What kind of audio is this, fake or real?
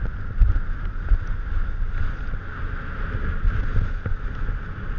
real